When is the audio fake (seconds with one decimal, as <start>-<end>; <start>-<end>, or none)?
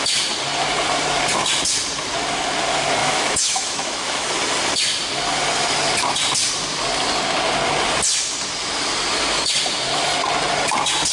3.0-4.3